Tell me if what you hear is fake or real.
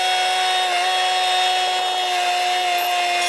real